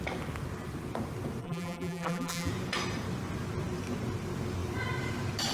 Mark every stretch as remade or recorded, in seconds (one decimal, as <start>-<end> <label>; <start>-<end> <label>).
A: 0.0-1.4 recorded; 1.4-2.5 remade; 2.5-5.5 recorded

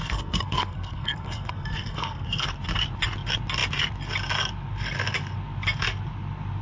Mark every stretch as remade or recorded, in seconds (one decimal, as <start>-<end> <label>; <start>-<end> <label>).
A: 0.0-2.5 remade; 2.5-6.6 recorded

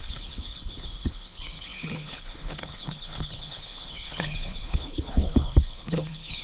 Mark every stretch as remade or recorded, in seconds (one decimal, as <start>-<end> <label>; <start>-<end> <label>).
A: 0.0-6.4 remade